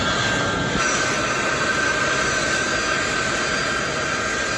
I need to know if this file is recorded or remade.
recorded